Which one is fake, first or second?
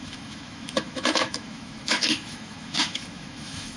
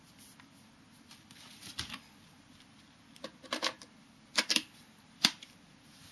first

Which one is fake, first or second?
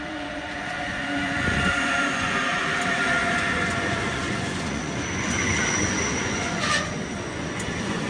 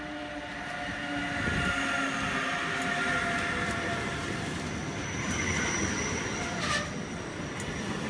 first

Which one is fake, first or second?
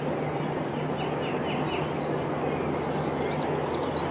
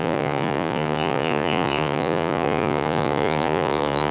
second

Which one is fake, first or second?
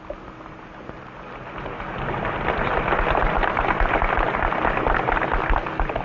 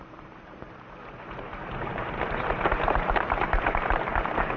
second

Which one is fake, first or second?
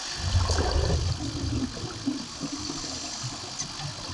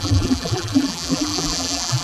second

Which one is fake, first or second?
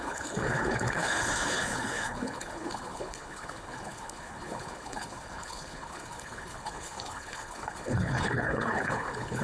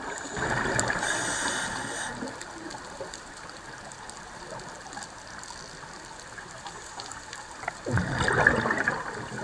first